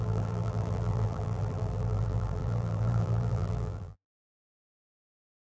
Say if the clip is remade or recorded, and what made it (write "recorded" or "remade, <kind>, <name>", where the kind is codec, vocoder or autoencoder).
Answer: remade, vocoder, BigVGAN v2